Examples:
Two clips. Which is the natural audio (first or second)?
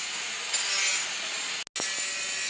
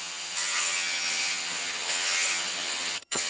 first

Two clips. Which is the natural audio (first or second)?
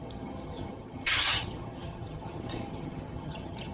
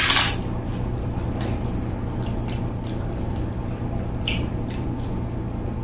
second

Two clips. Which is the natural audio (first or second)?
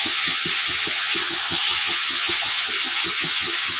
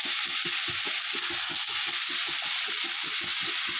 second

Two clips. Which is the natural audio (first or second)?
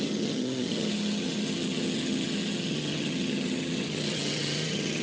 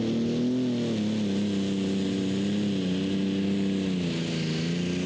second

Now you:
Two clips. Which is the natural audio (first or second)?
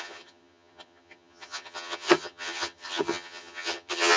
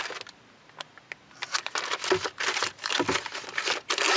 second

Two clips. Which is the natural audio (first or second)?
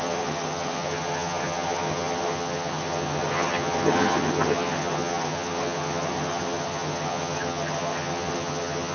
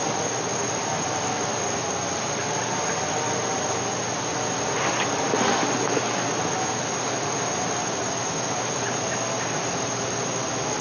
second